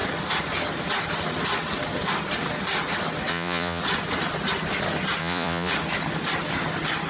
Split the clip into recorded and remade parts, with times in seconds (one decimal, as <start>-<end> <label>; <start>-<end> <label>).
0.0-3.3 recorded; 3.3-3.8 remade; 3.8-5.2 recorded; 5.2-5.7 remade; 5.7-7.1 recorded